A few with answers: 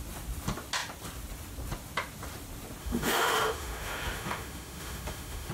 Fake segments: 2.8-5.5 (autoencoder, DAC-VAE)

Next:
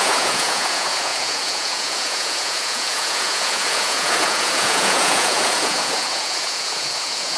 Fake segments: 0.0-7.4 (vocoder, Vocos)